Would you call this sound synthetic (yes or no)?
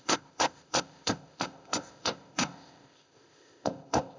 yes